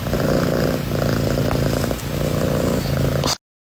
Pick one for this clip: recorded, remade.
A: recorded